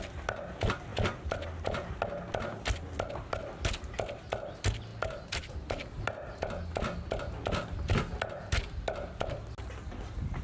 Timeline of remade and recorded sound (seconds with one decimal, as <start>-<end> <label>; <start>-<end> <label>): 0.0-10.4 recorded